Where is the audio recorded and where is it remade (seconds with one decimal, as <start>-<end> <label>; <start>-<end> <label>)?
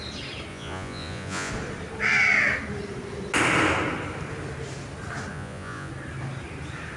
0.0-0.5 recorded; 0.5-1.5 remade; 1.5-5.3 recorded; 5.3-5.9 remade; 5.9-7.0 recorded